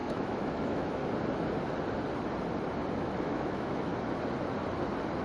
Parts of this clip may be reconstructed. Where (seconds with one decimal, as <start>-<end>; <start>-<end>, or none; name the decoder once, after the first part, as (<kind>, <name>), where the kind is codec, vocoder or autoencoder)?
0.0-1.0 (autoencoder, DAC-VAE); 2.9-3.9